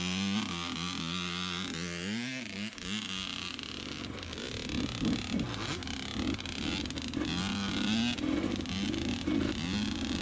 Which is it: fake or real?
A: real